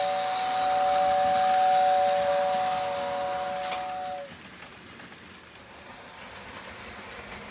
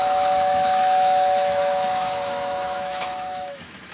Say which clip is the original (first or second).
first